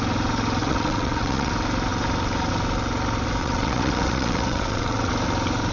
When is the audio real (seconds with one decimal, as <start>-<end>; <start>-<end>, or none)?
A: 0.0-0.6; 1.5-3.4; 5.1-5.7